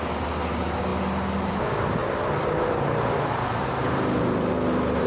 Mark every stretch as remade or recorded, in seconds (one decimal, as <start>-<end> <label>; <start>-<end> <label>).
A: 0.0-2.0 recorded; 2.0-4.5 remade; 4.5-5.1 recorded